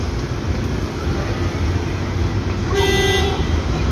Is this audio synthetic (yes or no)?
no